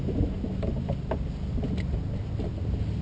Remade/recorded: recorded